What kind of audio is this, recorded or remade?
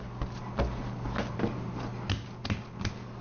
recorded